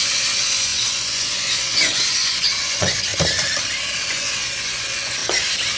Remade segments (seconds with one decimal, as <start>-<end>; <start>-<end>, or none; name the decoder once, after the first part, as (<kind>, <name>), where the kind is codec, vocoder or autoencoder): 0.0-3.1 (vocoder, Vocos); 4.1-5.2